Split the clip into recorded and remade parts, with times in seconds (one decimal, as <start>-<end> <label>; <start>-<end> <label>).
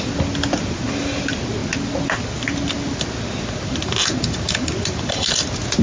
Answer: 0.0-5.8 recorded